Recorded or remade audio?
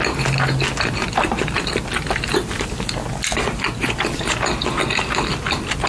recorded